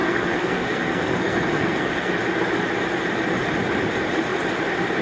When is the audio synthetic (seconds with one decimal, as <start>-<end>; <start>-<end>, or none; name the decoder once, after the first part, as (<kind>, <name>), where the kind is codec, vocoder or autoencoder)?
0.0-2.1 (codec, SNAC)